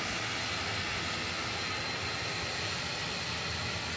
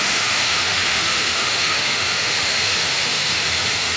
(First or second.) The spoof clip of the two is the second